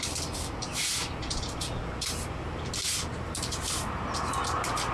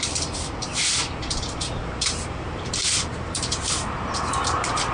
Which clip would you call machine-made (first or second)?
second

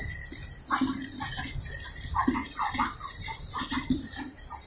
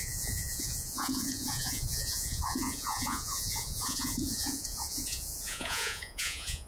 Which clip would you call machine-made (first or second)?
second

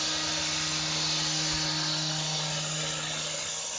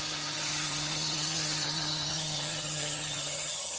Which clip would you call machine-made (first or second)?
second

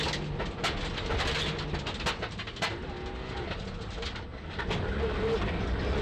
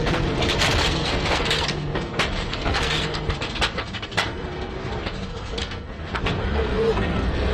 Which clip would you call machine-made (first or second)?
second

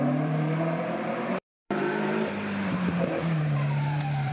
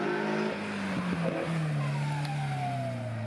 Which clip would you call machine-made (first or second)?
first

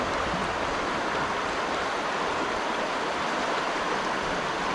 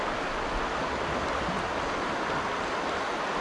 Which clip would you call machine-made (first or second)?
first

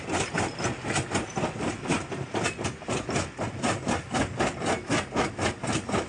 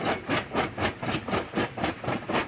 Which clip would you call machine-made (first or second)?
second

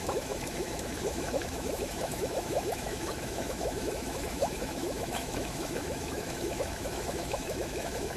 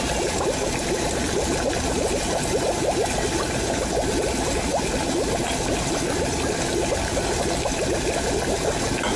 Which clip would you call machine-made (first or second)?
first